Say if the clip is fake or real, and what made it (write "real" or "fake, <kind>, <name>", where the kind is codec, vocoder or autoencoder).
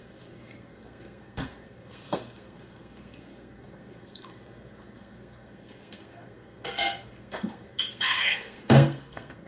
fake, codec, SNAC